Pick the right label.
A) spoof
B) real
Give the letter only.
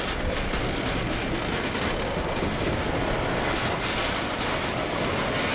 B